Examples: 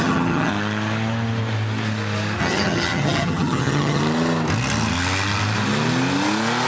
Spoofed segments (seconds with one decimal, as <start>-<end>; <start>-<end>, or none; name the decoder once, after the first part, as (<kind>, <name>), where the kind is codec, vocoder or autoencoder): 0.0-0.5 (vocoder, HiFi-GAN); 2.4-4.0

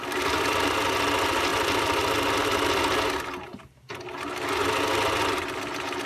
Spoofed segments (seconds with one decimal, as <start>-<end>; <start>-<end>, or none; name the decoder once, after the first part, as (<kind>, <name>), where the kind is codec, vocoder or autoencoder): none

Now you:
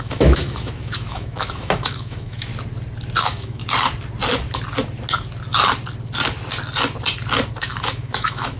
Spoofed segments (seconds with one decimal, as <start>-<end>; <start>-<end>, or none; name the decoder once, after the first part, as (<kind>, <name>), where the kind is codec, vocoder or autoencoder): 0.0-2.5 (autoencoder, DAC-VAE); 3.2-3.6; 7.5-8.6

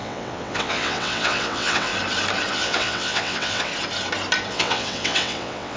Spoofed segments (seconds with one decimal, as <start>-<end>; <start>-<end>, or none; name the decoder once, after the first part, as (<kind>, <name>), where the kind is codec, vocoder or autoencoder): 0.0-1.9 (vocoder, WaveNeXt); 2.5-3.7; 4.5-5.8

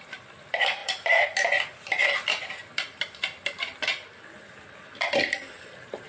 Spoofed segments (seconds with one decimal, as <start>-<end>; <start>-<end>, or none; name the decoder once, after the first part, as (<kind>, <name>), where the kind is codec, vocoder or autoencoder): none